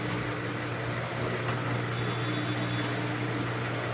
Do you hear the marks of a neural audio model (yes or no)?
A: no